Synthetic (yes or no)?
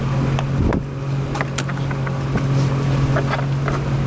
no